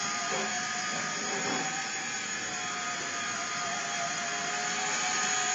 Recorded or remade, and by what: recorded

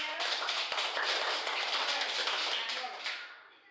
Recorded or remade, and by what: recorded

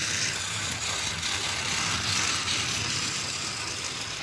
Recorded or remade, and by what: recorded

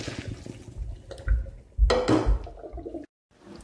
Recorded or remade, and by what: recorded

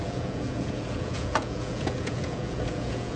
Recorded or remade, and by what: remade, vocoder, Vocos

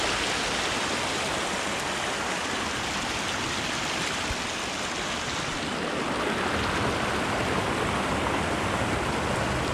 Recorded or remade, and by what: recorded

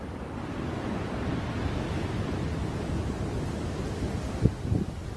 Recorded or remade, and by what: recorded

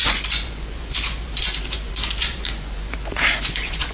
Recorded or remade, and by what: remade, vocoder, Vocos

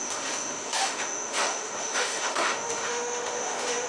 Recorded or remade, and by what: remade, autoencoder, DAC-VAE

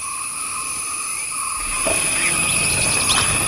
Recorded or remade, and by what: recorded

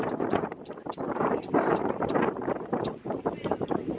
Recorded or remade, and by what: remade, vocoder, BigVGAN v2